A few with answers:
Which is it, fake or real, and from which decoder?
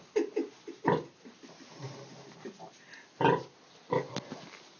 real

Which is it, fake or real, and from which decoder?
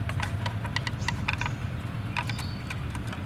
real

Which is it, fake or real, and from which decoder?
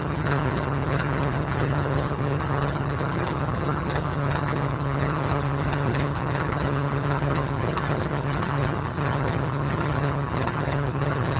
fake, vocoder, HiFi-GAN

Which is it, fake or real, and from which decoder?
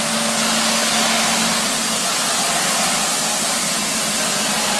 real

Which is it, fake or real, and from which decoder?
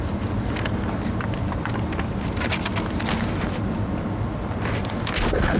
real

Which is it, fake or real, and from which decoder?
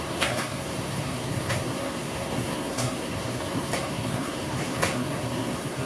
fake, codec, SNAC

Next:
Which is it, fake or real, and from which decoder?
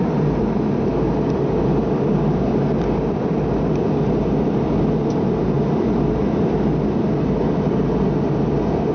real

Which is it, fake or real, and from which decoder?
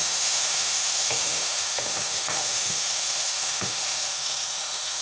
fake, autoencoder, DAC-VAE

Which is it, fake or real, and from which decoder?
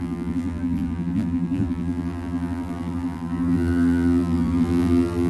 fake, vocoder, BigVGAN v2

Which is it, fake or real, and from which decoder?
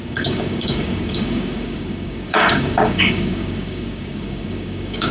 fake, codec, DAC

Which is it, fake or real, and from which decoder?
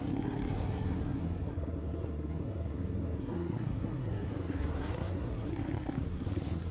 fake, codec, SNAC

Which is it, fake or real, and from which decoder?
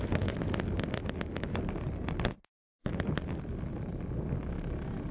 real